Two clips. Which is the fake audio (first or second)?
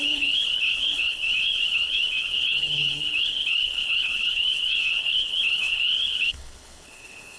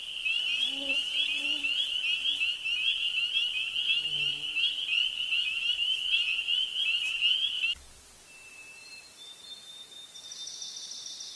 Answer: first